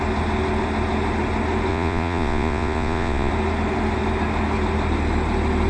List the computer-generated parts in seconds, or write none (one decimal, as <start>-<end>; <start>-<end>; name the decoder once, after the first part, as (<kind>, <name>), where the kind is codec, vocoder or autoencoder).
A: 1.7-3.3 (vocoder, Vocos)